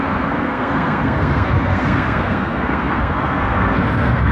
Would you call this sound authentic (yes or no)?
no